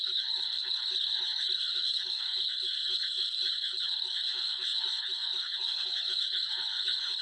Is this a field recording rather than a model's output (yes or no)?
no